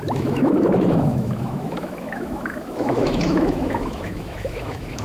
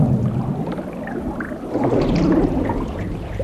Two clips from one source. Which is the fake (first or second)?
first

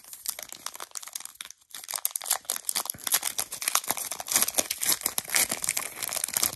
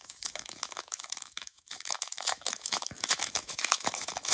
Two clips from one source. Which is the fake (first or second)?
second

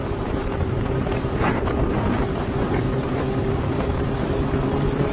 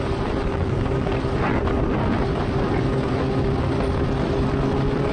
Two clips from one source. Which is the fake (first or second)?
first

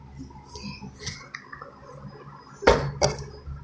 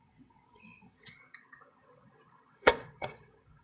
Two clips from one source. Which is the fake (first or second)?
second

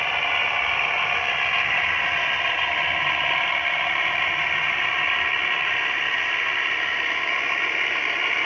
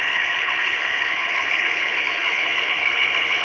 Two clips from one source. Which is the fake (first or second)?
second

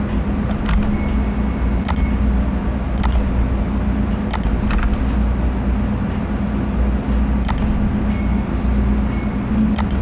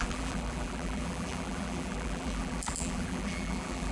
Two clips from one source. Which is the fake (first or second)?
second